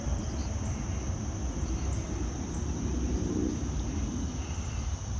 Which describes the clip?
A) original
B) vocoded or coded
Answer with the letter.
A